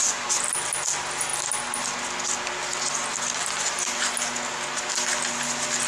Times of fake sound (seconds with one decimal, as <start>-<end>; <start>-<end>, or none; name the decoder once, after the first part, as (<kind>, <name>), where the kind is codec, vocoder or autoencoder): none